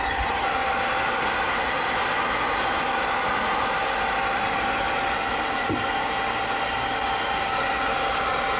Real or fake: real